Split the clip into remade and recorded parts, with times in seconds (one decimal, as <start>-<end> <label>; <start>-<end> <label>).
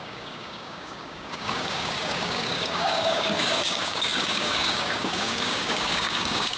0.0-6.6 remade